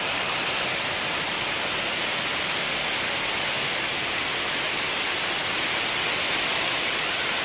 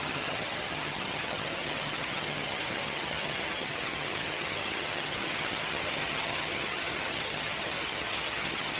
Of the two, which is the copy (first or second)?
second